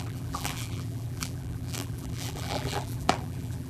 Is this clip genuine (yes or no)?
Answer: no